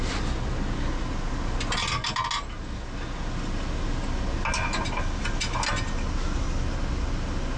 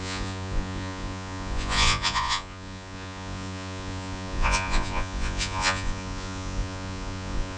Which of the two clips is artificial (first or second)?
second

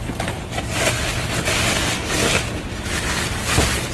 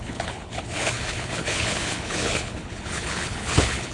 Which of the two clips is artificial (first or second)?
second